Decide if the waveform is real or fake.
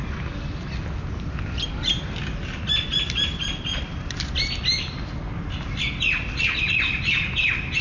real